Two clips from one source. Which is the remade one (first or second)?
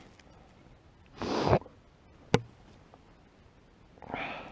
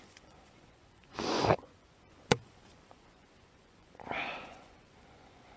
second